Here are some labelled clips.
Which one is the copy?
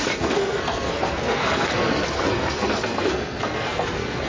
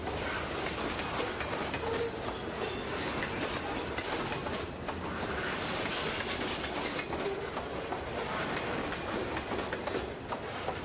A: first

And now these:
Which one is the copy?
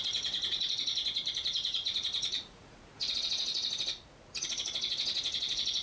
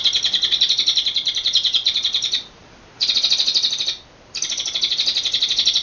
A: first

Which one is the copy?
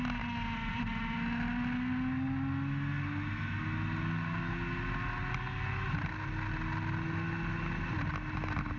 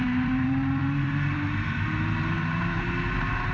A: second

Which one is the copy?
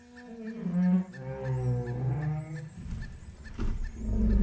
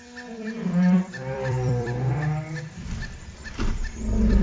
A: second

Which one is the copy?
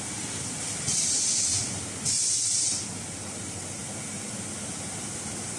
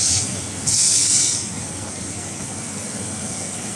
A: second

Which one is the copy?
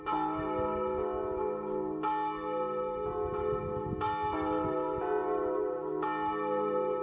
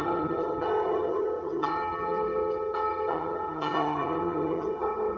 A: second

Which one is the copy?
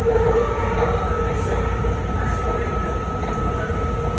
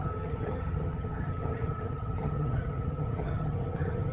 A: second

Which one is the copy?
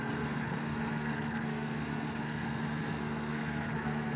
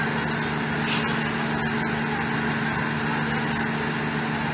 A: first